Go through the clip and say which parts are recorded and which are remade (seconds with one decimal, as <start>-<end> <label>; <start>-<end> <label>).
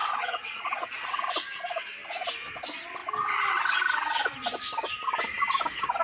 0.0-1.3 remade; 1.3-6.0 recorded